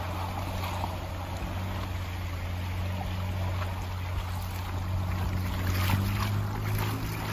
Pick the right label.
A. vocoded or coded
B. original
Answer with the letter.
B